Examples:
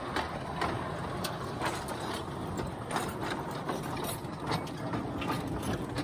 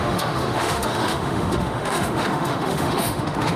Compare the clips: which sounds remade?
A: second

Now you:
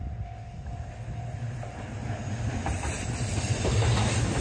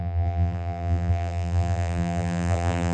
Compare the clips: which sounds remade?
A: second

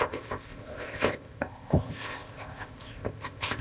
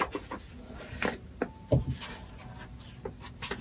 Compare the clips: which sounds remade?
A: first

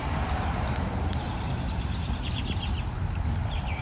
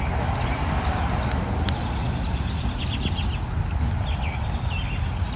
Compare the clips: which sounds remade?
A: first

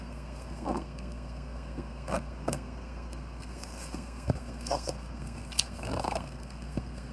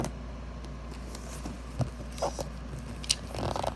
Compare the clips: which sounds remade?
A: first